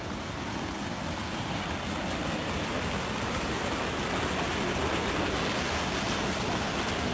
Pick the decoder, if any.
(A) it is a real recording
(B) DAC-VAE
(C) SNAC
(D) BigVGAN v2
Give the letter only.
A